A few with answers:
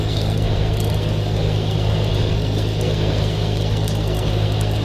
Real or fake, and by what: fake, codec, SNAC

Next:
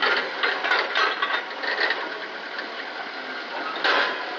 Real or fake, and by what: real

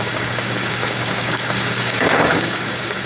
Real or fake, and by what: fake, codec, DAC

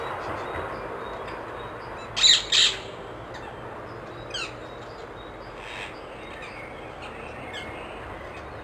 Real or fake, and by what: real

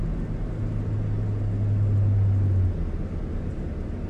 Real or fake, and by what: real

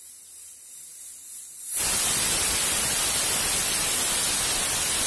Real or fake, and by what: real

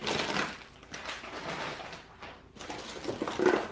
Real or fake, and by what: real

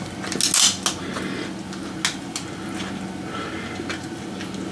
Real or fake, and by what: real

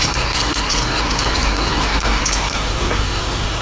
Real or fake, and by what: fake, codec, SNAC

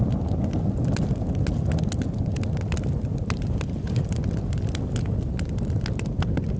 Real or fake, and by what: real